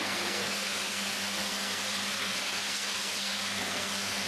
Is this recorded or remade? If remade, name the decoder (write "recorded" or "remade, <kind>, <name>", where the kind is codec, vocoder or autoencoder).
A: remade, codec, SNAC